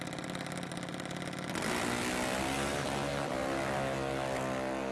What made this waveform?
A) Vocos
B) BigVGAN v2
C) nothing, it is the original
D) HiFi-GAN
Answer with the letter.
C